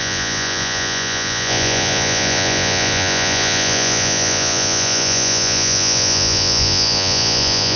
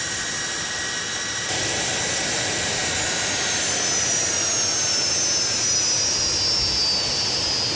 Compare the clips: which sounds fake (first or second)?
first